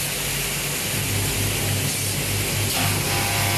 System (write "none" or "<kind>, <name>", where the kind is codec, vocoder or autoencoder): none